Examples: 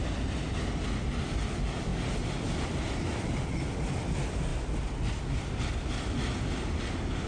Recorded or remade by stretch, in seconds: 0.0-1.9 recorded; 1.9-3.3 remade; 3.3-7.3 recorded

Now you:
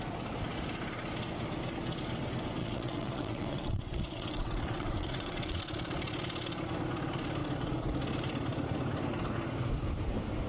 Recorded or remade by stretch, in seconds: 0.0-2.6 recorded; 2.6-5.6 remade; 5.6-10.5 recorded